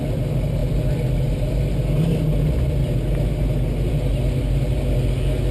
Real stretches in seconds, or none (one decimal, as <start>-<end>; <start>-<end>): 0.0-5.5